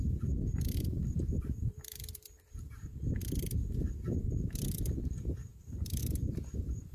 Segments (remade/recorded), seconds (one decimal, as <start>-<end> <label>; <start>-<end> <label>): 0.0-0.5 recorded; 0.5-2.7 remade; 2.7-5.5 recorded; 5.5-6.0 remade; 6.0-6.9 recorded